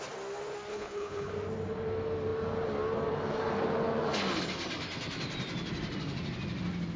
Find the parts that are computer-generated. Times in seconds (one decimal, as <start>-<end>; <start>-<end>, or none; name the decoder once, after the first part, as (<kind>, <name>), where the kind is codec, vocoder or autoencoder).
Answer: 0.7-1.3 (codec, HILCodec)